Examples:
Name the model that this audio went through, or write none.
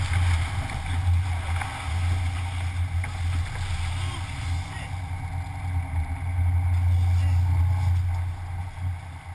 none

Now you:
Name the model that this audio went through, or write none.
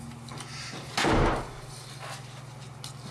none